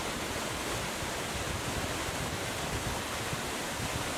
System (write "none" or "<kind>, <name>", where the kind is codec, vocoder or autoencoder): none